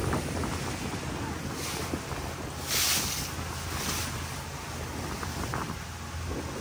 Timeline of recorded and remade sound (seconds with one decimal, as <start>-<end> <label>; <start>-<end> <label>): 0.0-6.6 recorded